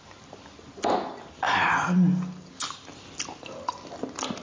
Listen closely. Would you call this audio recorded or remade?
recorded